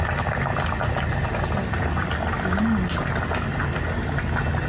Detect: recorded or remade recorded